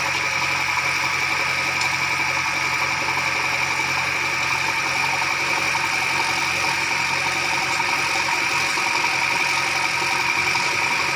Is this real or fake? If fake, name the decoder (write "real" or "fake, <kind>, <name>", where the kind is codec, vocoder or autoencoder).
real